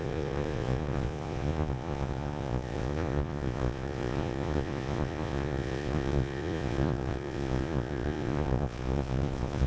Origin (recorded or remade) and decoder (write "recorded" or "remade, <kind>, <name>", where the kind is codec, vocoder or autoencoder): remade, vocoder, Vocos